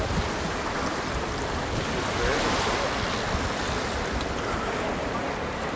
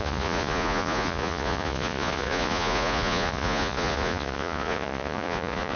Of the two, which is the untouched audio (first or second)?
first